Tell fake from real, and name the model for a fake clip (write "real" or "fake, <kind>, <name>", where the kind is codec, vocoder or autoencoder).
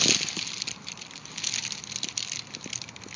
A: real